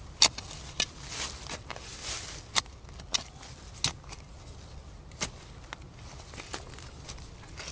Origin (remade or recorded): recorded